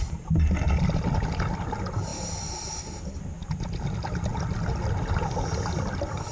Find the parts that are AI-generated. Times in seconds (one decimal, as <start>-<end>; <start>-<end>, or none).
none